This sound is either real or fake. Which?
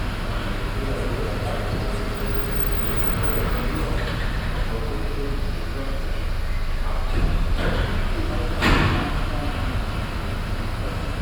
real